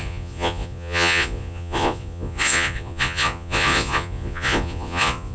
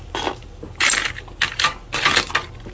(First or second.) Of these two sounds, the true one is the second